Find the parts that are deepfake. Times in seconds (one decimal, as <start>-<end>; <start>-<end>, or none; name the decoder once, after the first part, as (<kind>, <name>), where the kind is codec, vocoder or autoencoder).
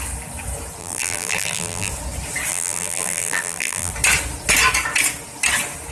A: 0.8-1.9 (vocoder, BigVGAN v2); 2.5-3.9